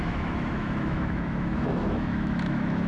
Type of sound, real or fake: fake